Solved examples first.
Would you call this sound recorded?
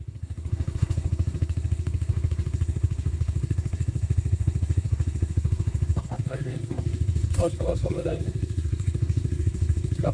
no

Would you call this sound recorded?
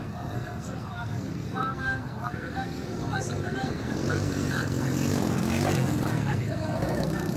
no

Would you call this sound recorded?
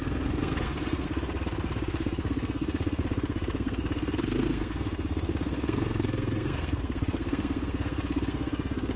no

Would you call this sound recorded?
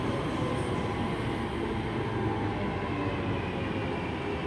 yes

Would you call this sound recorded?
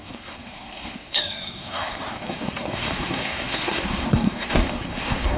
no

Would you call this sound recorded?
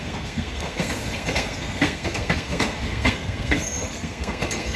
no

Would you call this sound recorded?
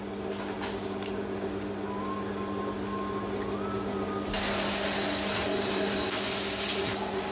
yes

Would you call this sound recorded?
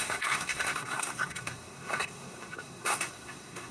no